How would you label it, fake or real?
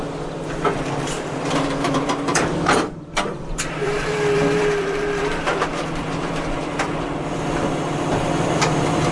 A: fake